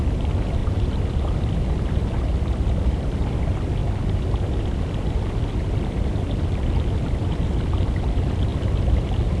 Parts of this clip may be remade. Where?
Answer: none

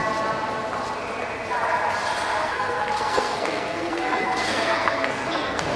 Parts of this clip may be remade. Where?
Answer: 2.4-5.8 (codec, SNAC)

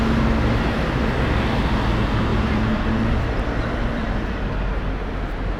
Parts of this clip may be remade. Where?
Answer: 2.3-4.4 (vocoder, BigVGAN v2)